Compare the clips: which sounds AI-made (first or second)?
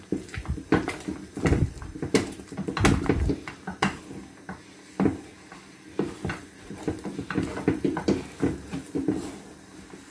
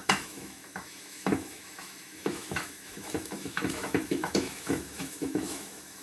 second